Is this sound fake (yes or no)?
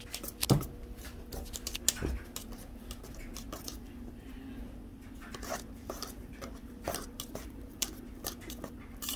no